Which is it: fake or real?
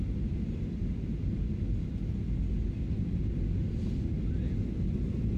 real